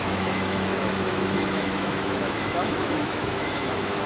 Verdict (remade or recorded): remade